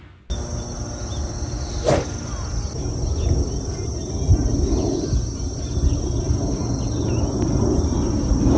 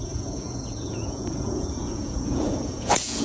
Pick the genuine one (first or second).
first